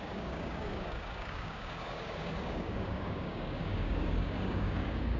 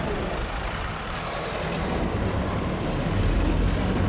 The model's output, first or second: first